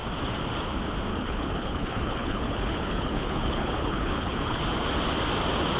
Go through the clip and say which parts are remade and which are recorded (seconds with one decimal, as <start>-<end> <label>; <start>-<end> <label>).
0.0-1.1 recorded; 1.1-4.6 remade; 4.6-5.8 recorded